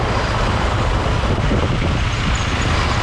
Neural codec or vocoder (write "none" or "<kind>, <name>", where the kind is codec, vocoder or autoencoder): none